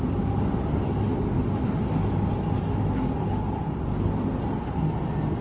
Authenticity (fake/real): real